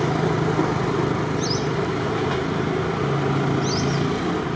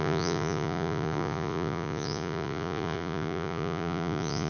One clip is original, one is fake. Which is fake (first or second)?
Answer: second